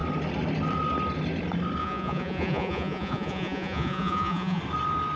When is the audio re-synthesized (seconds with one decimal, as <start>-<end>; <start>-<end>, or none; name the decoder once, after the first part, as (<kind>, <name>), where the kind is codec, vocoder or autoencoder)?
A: 1.8-4.6 (vocoder, Vocos)